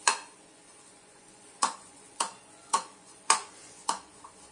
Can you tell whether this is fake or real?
fake